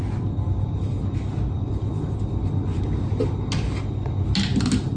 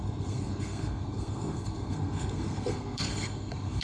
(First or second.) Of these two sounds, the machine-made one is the second